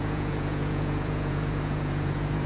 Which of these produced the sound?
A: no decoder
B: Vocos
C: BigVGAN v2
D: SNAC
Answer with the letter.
B